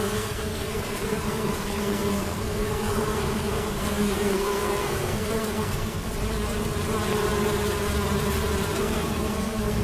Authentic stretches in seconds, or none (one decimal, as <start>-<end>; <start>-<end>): 6.1-8.8